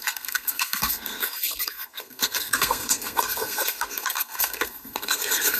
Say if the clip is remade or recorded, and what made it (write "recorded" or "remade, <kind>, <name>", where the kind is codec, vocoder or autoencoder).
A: remade, codec, SNAC